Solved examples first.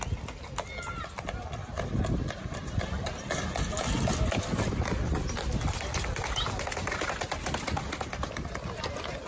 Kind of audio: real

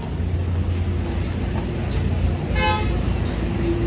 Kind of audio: real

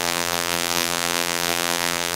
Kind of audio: fake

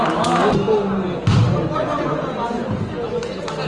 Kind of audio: real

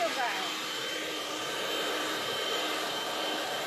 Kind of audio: fake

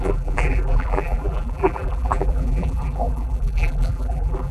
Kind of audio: fake